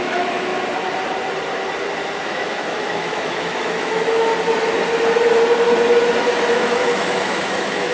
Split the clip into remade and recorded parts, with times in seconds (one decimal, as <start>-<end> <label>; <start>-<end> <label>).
0.0-0.5 remade; 0.5-2.2 recorded; 2.2-4.3 remade; 4.3-6.5 recorded; 6.5-7.9 remade